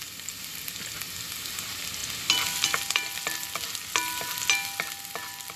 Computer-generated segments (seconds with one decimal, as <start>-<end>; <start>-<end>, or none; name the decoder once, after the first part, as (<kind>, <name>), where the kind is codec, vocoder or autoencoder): none